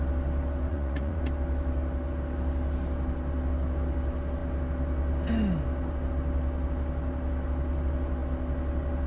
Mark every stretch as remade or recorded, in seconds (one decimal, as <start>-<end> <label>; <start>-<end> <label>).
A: 0.0-0.7 recorded; 0.7-1.2 remade; 1.2-9.1 recorded